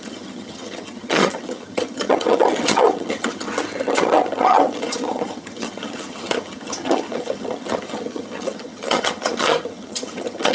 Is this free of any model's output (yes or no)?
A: no